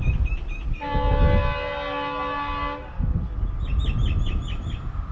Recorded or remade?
recorded